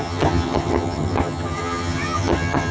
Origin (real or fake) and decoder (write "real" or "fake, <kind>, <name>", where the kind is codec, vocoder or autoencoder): fake, vocoder, HiFi-GAN